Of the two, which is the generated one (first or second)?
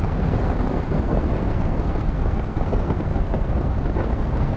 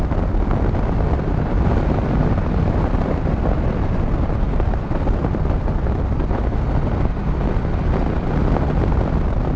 first